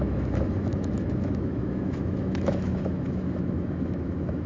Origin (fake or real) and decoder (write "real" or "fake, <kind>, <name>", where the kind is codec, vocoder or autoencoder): fake, autoencoder, DAC-VAE